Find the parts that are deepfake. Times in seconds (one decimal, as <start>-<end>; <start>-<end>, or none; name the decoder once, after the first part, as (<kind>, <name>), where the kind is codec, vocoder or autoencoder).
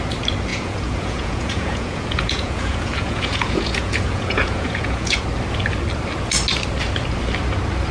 0.5-5.2 (vocoder, Vocos)